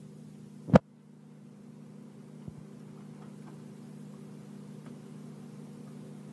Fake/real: real